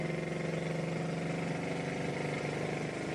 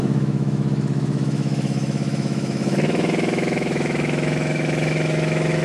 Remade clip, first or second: second